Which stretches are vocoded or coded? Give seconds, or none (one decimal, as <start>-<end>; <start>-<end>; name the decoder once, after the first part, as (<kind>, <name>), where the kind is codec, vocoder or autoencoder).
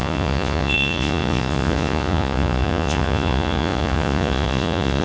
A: 0.0-5.0 (vocoder, Vocos)